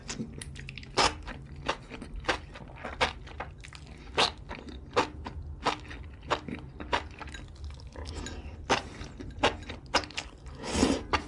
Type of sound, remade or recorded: recorded